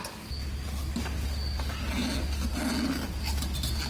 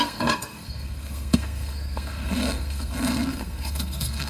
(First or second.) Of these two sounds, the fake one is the second